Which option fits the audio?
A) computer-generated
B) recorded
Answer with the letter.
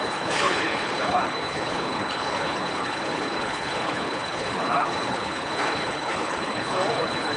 A